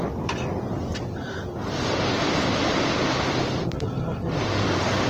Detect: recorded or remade recorded